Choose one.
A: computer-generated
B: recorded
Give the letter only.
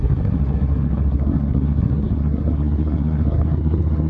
A